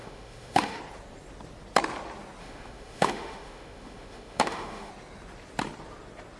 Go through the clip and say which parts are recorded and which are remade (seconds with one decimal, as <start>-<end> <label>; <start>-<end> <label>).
0.0-0.8 remade; 0.8-2.4 recorded; 2.4-4.9 remade; 4.9-6.4 recorded